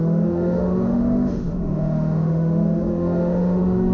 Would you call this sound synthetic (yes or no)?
yes